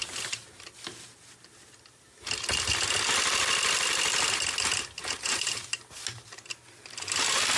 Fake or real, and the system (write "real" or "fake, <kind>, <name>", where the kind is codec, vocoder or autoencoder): real